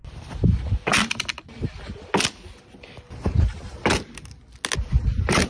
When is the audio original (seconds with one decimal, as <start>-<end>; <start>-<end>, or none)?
0.0-5.5

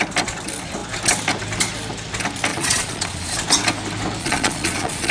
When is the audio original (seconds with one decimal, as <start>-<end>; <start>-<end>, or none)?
0.0-2.5; 3.3-4.2

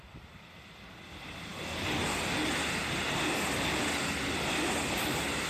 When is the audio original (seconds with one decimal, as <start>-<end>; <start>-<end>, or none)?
0.0-5.5

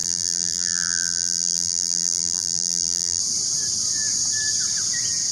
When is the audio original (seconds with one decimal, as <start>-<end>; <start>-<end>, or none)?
3.2-5.3